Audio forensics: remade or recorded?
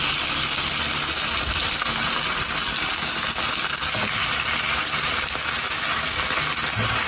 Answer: recorded